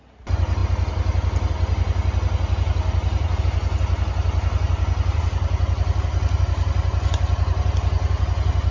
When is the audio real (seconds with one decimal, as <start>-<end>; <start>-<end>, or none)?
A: 0.0-8.7